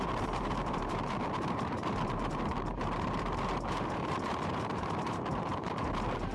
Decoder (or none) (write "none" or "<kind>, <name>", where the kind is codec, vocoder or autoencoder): vocoder, BigVGAN v2